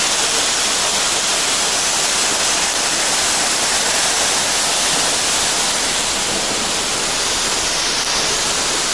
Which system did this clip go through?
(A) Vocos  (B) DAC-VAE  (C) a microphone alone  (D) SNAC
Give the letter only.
C